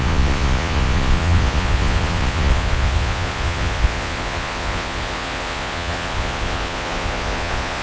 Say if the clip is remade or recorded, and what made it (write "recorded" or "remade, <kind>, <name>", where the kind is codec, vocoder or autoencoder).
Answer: remade, vocoder, Vocos